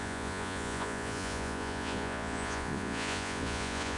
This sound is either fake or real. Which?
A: fake